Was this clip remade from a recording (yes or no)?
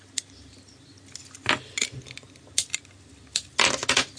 no